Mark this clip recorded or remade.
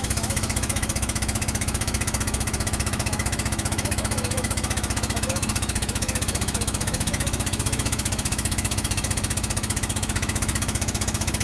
remade